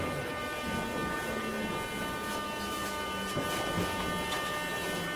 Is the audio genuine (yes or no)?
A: yes